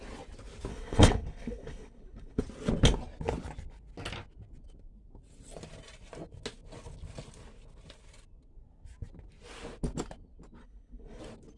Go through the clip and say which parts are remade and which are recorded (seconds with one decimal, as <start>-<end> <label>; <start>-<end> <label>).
0.0-0.7 recorded; 0.7-2.4 remade; 2.4-10.6 recorded; 10.6-11.2 remade; 11.2-11.6 recorded